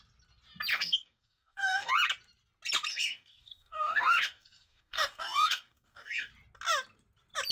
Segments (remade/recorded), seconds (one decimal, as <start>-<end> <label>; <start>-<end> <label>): 0.0-0.7 recorded; 0.7-1.9 remade; 1.9-2.9 recorded; 2.9-6.3 remade; 6.3-7.5 recorded